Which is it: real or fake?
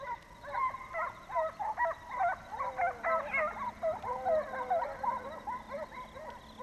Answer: real